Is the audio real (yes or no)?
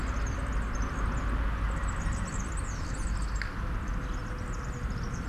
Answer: yes